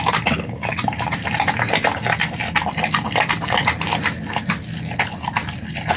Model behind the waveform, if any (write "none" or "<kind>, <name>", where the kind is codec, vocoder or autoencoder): none